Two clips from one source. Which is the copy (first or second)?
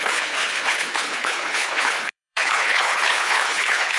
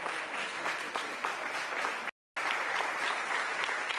first